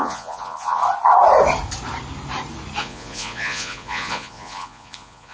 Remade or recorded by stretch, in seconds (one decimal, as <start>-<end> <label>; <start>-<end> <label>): 0.0-0.8 remade; 0.8-2.8 recorded; 2.8-5.3 remade

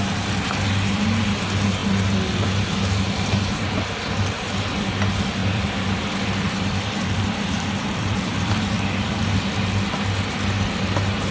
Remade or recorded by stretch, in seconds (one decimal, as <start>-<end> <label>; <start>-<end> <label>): 0.0-5.4 recorded; 5.4-9.2 remade; 9.2-11.3 recorded